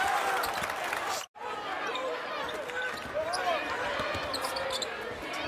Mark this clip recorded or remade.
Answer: recorded